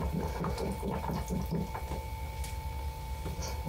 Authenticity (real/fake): real